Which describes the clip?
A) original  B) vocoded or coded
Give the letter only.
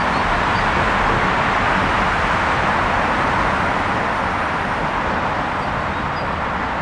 A